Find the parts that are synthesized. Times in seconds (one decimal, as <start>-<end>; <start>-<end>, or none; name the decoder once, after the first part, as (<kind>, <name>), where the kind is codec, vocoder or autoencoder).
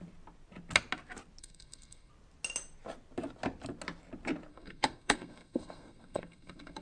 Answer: 1.4-2.1 (codec, SNAC); 4.5-6.8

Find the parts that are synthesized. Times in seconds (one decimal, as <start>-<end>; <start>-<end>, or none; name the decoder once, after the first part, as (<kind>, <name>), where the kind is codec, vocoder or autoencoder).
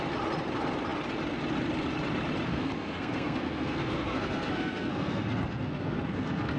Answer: 2.5-6.6 (codec, SNAC)